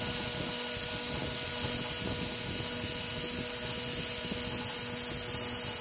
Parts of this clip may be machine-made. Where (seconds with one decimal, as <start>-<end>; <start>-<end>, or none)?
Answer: none